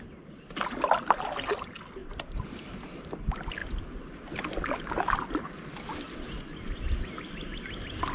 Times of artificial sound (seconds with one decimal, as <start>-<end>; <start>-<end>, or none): none